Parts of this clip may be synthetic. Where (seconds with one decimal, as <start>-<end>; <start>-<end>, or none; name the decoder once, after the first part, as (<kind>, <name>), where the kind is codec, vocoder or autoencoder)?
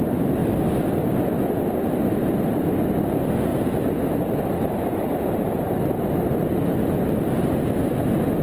3.5-6.1 (vocoder, BigVGAN v2)